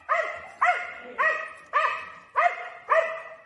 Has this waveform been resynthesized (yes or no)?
no